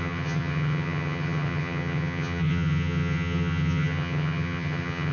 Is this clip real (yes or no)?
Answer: no